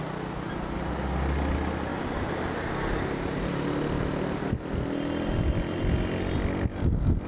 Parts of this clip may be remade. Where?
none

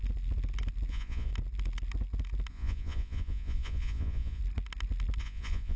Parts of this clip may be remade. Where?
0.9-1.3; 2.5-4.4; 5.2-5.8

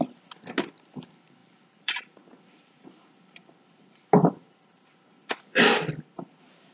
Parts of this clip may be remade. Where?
1.4-5.4

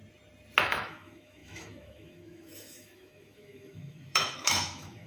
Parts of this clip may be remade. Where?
0.6-5.1

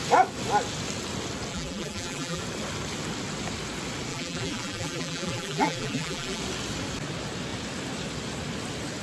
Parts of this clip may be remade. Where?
1.5-2.4; 4.1-6.4